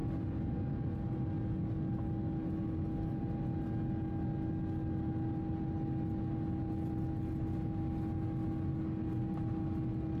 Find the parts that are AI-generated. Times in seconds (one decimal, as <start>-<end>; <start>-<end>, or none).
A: none